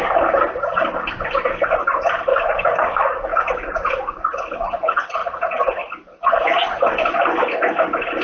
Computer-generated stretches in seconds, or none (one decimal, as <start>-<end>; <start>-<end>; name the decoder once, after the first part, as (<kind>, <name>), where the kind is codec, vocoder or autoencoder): 2.3-3.5 (codec, DAC)